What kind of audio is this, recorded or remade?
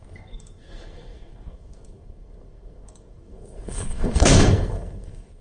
remade